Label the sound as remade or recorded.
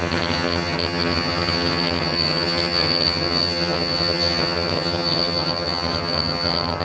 remade